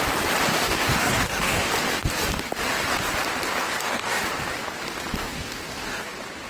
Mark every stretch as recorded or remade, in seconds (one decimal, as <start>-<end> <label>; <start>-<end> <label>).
0.0-0.5 recorded; 0.5-1.7 remade; 1.7-3.6 recorded; 3.6-4.2 remade; 4.2-5.1 recorded; 5.1-6.1 remade; 6.1-6.5 recorded